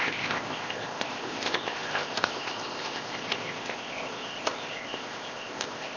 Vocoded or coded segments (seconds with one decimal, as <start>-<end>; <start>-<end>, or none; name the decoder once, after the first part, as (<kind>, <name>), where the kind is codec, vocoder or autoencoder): 0.0-6.0 (codec, ZipCodec)